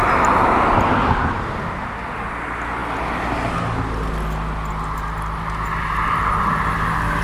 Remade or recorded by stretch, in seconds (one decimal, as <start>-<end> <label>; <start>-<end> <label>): 0.0-7.2 recorded